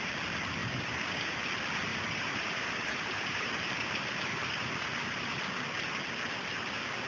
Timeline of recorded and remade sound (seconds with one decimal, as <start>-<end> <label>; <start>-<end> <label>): 0.0-0.6 recorded; 0.6-1.4 remade; 1.4-1.9 recorded; 1.9-5.4 remade; 5.4-7.1 recorded